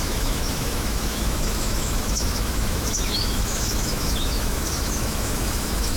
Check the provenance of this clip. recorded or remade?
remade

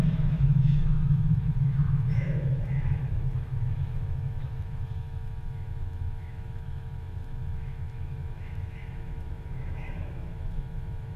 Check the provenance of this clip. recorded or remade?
remade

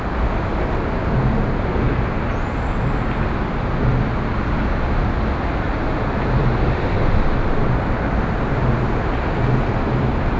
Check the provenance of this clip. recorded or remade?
recorded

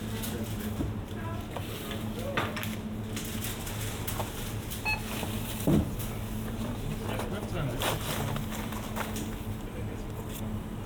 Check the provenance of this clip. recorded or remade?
recorded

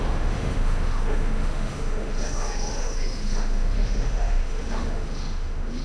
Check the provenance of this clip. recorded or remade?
remade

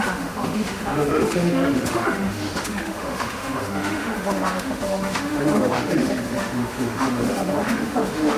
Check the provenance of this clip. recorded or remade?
remade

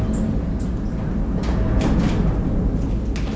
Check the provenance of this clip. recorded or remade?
recorded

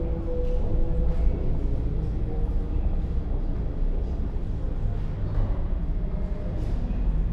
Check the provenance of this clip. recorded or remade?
recorded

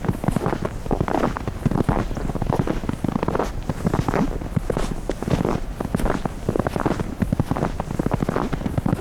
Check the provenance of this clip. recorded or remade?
recorded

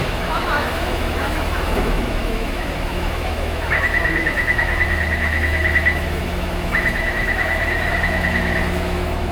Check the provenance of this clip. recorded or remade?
remade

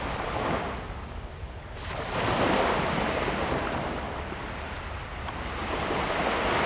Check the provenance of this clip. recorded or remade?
recorded